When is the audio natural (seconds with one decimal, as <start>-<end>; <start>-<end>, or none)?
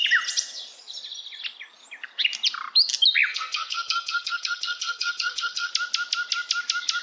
0.0-3.3; 5.7-7.0